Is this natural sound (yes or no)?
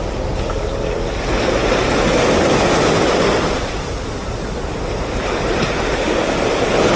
yes